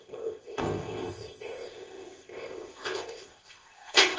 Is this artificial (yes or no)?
yes